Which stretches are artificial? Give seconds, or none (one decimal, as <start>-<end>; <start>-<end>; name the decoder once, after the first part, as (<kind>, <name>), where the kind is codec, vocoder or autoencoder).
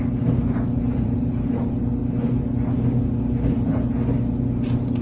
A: 0.9-1.5 (vocoder, BigVGAN v2)